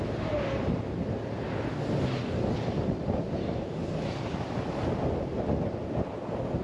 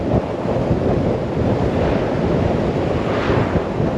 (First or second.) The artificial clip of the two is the second